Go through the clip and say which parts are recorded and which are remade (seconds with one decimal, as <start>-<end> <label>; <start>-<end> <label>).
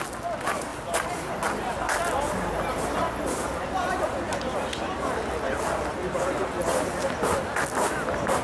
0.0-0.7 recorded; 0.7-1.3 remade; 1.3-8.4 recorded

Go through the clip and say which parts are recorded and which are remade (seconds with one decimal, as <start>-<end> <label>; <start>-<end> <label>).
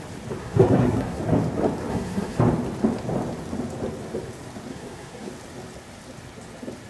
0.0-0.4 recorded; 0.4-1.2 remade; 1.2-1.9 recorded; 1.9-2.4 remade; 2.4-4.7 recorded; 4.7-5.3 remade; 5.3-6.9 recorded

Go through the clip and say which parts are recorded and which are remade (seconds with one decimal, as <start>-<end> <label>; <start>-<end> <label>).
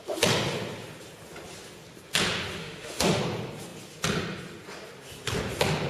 0.0-2.6 recorded; 2.6-3.2 remade; 3.2-5.9 recorded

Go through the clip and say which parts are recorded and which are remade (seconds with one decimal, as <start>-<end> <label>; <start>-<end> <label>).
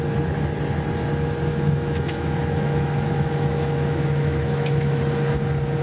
0.0-1.5 recorded; 1.5-5.0 remade; 5.0-5.8 recorded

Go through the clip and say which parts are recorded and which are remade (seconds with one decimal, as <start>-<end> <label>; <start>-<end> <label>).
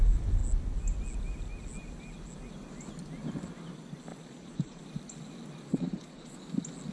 0.0-4.1 recorded; 4.1-4.8 remade; 4.8-5.7 recorded; 5.7-6.4 remade; 6.4-6.9 recorded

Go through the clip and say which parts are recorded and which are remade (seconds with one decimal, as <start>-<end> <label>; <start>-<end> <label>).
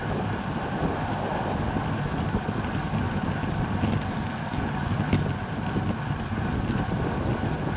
0.0-7.8 recorded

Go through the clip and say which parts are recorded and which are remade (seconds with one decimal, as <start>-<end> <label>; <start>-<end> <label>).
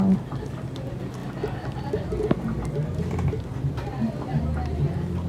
0.0-5.3 recorded